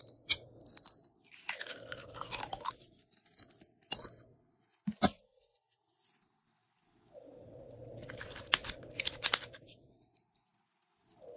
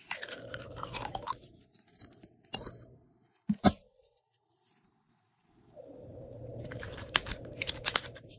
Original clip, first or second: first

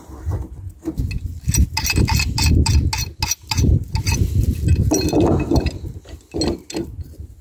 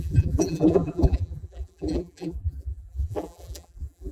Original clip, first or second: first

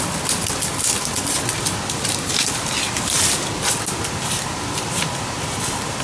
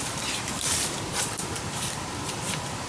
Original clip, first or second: first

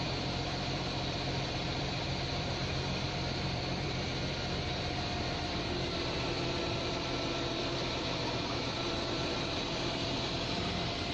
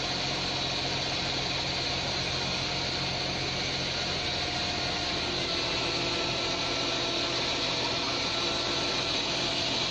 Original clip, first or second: second